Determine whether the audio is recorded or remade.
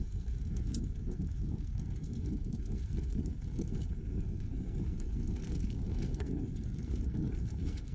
remade